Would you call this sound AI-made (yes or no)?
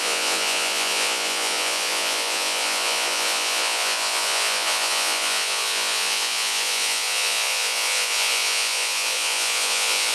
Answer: yes